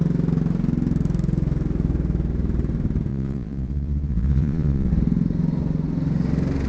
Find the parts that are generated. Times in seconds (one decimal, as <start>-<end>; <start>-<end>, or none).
3.1-4.9